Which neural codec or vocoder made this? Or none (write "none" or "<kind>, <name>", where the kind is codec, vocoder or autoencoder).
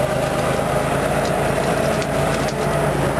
none